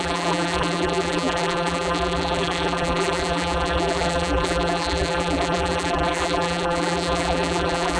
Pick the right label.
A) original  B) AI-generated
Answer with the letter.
B